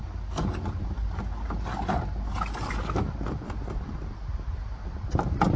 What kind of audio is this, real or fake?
real